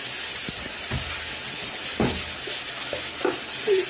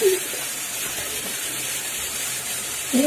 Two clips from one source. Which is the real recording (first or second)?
first